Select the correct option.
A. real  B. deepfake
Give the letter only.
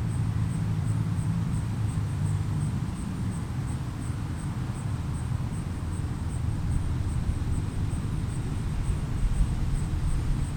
B